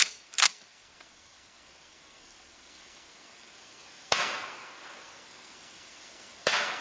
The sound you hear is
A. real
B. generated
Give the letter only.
B